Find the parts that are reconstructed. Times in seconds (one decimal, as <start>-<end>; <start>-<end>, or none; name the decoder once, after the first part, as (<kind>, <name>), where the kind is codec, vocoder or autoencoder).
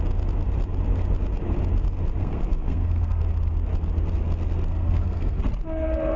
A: 2.2-3.2 (codec, SNAC); 4.7-5.4